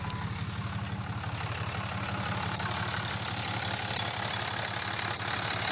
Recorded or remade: recorded